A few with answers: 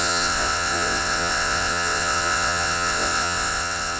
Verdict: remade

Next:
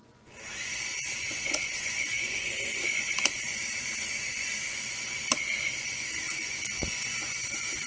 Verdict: remade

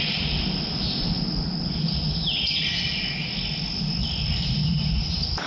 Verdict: recorded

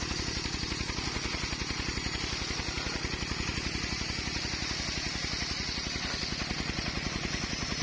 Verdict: recorded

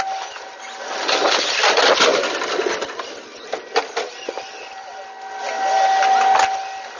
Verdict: recorded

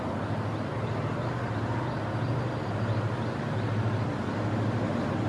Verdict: recorded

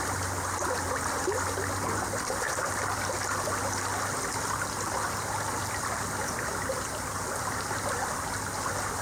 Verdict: recorded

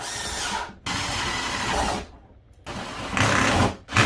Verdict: recorded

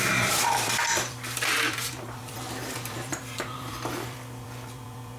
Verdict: remade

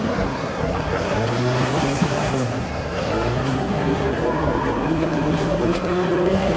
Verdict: remade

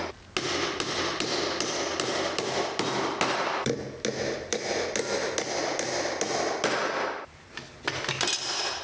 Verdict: recorded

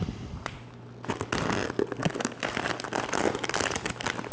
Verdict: recorded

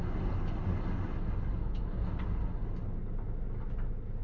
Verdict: recorded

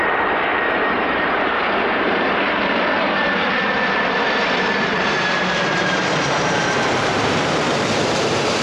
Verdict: remade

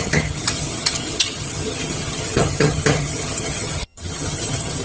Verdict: remade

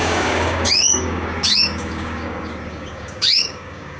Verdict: remade